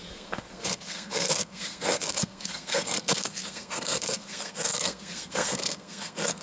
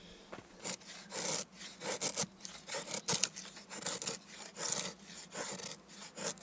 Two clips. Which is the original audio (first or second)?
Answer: second